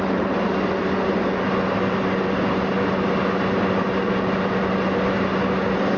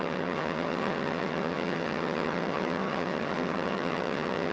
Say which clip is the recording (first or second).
first